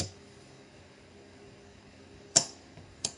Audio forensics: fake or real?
fake